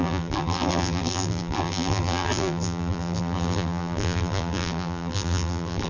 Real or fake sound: fake